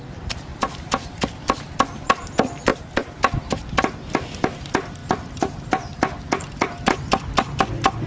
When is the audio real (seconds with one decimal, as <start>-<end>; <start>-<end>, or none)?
0.0-0.5; 1.3-2.7; 3.2-8.1